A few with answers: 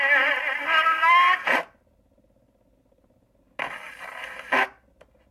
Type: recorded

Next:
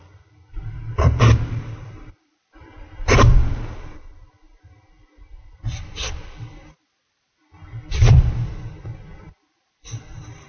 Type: remade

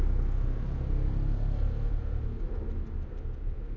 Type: recorded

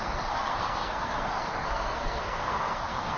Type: remade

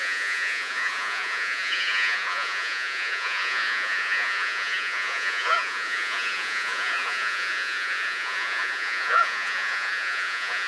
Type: remade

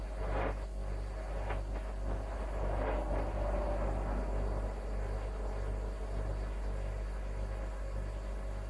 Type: recorded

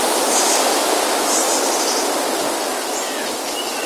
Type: recorded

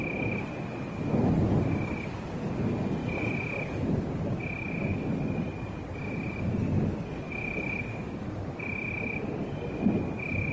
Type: recorded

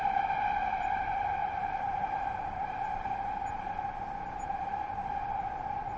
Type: remade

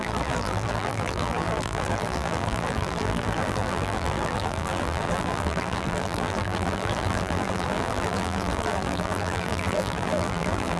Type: remade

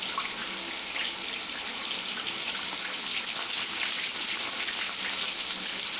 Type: recorded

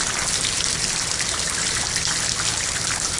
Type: recorded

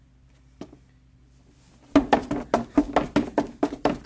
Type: recorded